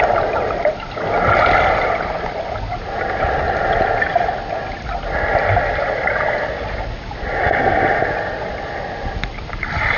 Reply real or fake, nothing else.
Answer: real